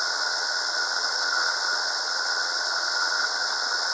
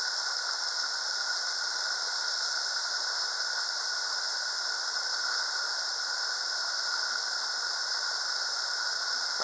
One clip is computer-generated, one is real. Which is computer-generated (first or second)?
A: first